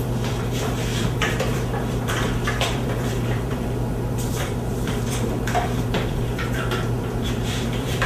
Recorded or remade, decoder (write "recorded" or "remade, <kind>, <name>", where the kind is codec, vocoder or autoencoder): remade, vocoder, BigVGAN v2